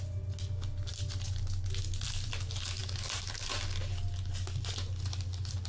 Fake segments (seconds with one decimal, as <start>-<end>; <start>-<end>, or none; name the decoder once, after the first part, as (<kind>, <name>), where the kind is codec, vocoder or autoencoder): none